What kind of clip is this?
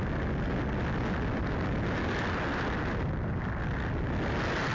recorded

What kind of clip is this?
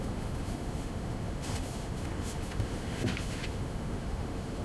remade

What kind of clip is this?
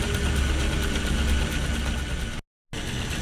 recorded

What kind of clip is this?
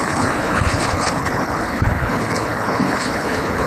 remade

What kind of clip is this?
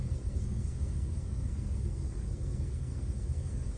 remade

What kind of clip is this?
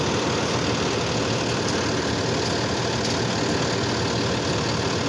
recorded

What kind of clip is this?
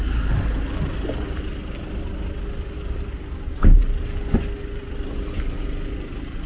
recorded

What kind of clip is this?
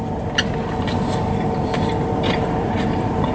remade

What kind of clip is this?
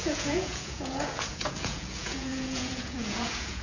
remade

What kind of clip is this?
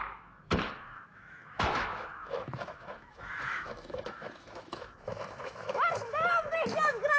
remade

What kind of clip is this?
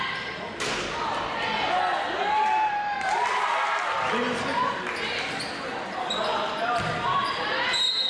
recorded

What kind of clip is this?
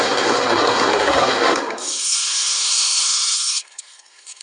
remade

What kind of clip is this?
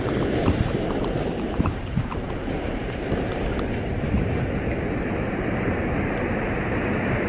remade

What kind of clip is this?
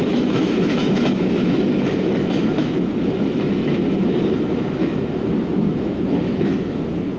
remade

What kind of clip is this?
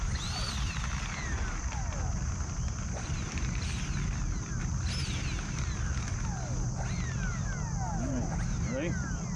recorded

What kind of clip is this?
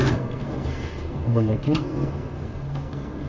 remade